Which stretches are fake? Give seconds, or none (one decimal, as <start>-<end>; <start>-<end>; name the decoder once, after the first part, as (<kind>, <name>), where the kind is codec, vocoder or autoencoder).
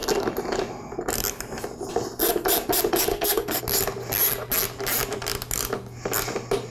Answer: 3.1-3.6 (codec, SNAC)